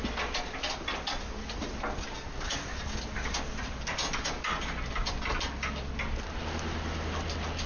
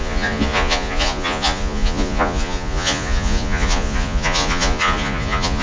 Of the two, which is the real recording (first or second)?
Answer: first